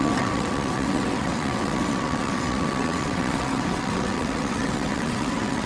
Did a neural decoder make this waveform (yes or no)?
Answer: yes